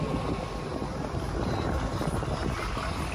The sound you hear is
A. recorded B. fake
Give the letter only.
A